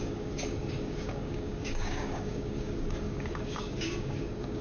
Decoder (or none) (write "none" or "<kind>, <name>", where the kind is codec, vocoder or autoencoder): codec, DAC